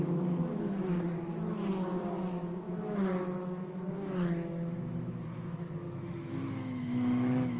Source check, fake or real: fake